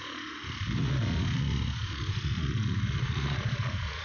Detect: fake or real fake